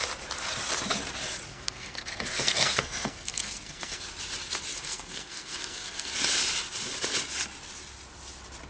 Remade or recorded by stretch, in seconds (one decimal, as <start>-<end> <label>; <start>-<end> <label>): 0.0-1.5 recorded; 1.5-4.1 remade; 4.1-4.7 recorded; 4.7-6.1 remade; 6.1-8.7 recorded